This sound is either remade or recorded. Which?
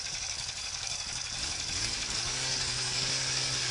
remade